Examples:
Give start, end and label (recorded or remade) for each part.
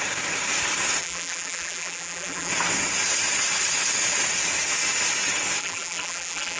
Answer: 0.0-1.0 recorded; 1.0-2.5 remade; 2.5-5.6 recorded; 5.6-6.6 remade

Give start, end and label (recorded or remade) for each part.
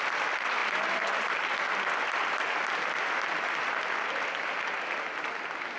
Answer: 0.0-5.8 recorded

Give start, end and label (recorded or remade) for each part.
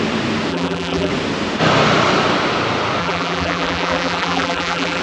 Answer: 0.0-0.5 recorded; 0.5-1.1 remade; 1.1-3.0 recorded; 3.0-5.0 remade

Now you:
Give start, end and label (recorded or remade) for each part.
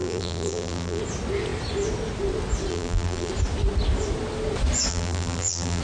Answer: 0.0-1.0 remade; 1.0-2.7 recorded; 2.7-3.3 remade; 3.3-4.9 recorded; 4.9-5.8 remade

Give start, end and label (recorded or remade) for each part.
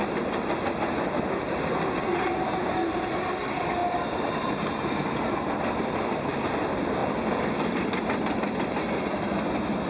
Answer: 0.0-9.9 recorded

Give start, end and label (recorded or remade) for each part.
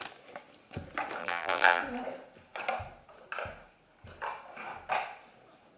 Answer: 0.0-1.2 recorded; 1.2-1.8 remade; 1.8-5.8 recorded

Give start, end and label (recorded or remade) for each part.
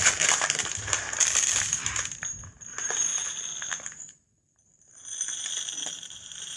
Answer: 0.0-3.1 remade; 3.1-3.7 recorded; 3.7-5.1 remade; 5.1-5.9 recorded; 5.9-6.6 remade